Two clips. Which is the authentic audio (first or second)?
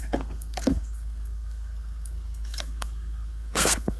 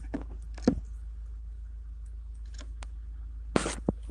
second